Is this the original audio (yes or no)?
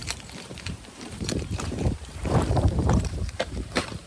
no